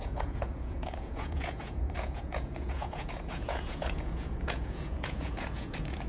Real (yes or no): no